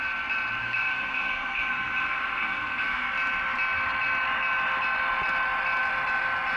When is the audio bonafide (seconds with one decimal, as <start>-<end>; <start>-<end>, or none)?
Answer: 0.0-0.6; 3.1-6.6